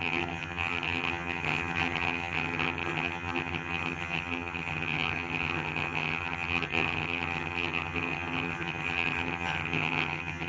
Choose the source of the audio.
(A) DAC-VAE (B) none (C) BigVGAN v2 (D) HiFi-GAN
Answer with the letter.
D